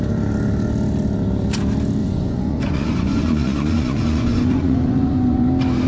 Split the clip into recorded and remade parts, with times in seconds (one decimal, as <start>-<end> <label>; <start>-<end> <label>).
0.0-2.0 recorded; 2.0-5.5 remade; 5.5-5.9 recorded